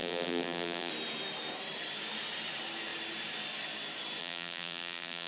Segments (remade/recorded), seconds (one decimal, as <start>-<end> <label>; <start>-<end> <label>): 0.0-0.9 remade; 0.9-4.2 recorded; 4.2-5.3 remade